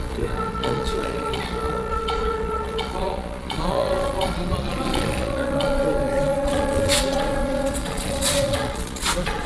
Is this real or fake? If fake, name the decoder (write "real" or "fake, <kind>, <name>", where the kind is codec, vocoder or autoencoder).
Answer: fake, vocoder, Vocos